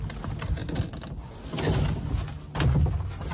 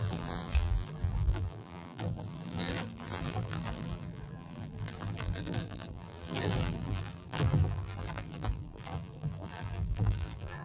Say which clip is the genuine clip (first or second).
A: first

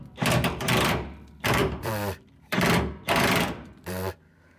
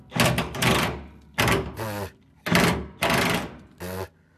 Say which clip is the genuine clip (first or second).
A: second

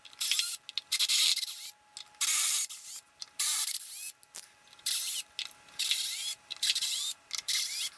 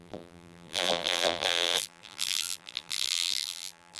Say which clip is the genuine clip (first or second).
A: first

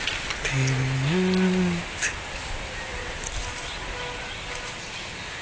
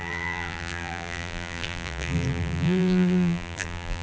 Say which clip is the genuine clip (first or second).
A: first